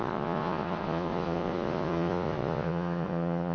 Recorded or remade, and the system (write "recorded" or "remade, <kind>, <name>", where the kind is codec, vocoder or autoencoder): remade, vocoder, Vocos